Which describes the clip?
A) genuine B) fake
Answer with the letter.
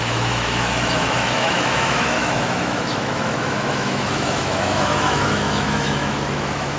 B